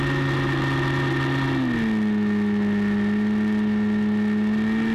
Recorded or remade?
recorded